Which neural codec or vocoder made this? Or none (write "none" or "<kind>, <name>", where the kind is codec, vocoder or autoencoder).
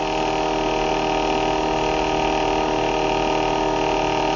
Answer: none